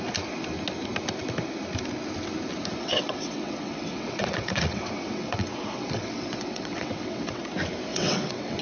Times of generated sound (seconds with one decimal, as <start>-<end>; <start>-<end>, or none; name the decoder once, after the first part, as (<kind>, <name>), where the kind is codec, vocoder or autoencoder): 2.8-7.4 (vocoder, WaveNeXt); 7.9-8.6

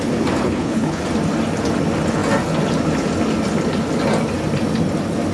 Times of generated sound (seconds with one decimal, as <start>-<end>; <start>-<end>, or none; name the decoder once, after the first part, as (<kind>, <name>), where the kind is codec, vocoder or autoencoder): 0.4-1.0 (codec, HILCodec)

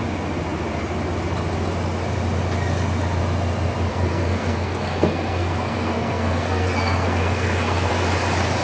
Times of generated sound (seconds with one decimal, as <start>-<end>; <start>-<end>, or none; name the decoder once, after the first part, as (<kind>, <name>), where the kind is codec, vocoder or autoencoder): 3.9-7.9 (codec, SNAC)

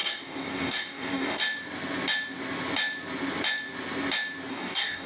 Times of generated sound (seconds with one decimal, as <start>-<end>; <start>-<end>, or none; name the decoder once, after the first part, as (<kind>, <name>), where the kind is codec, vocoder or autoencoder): 0.0-1.4 (codec, DAC); 4.5-5.1

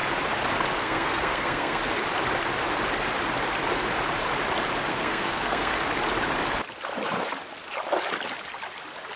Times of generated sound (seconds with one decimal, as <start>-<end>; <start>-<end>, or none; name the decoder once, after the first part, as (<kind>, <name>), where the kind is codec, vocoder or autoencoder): 0.8-1.8 (codec, SNAC); 4.9-5.7

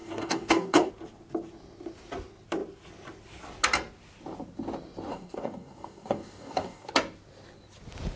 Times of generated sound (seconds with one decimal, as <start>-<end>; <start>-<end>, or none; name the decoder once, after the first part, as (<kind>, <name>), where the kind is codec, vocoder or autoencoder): 0.0-0.9 (codec, DAC); 5.1-6.9

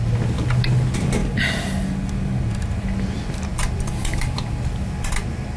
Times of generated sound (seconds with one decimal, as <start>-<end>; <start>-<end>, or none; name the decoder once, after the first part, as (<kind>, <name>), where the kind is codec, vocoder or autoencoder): 3.5-4.9 (vocoder, BigVGAN v2)